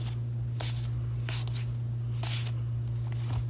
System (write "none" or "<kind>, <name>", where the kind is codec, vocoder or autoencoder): none